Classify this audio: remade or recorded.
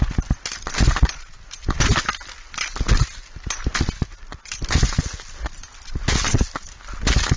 recorded